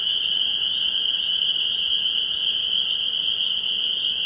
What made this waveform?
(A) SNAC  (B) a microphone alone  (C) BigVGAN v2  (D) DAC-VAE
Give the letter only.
B